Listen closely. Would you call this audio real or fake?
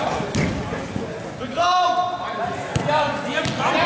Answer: real